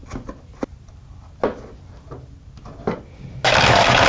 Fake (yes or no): no